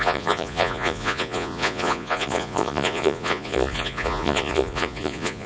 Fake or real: fake